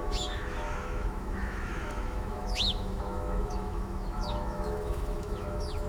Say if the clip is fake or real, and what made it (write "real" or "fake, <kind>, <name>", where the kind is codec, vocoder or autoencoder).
fake, autoencoder, DAC-VAE